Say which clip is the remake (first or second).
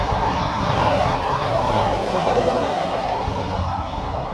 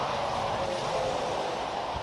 first